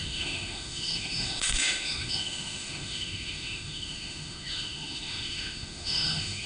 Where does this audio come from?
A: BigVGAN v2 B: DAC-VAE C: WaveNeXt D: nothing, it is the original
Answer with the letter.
B